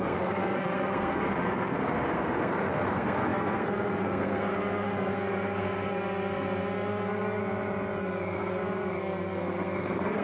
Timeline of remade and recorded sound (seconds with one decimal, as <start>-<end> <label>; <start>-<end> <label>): 0.0-7.4 remade; 7.4-8.0 recorded; 8.0-10.2 remade